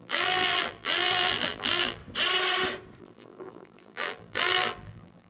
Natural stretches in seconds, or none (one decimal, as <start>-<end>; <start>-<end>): 2.0-3.0